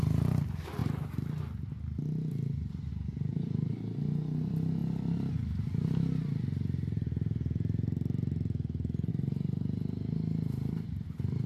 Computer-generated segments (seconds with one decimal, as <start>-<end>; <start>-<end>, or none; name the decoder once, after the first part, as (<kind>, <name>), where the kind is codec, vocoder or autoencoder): none